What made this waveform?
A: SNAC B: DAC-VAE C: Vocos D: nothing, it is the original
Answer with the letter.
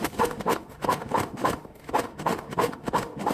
B